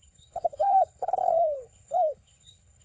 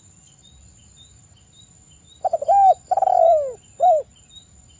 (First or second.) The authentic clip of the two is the second